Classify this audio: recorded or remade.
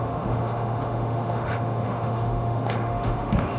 remade